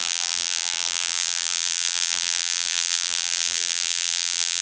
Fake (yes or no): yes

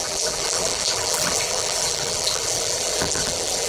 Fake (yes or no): yes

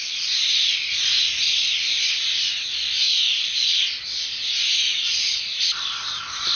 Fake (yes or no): yes